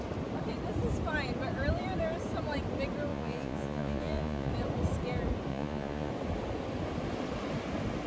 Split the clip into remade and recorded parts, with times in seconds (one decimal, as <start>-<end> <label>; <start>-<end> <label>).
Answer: 0.0-3.1 recorded; 3.1-4.5 remade; 4.5-5.5 recorded; 5.5-6.1 remade; 6.1-8.1 recorded